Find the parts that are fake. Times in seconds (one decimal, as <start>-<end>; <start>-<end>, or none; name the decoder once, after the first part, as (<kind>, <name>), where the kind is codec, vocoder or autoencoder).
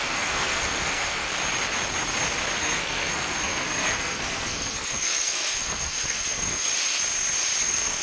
0.0-1.3 (codec, SNAC); 2.6-6.7; 7.6-8.0